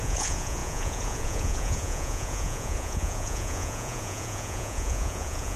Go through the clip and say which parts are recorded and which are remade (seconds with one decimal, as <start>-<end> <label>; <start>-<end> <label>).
0.0-5.6 remade